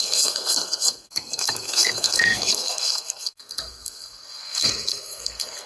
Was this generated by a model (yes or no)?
yes